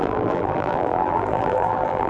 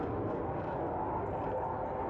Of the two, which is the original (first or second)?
second